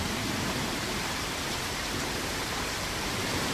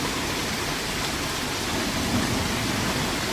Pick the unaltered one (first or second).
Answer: second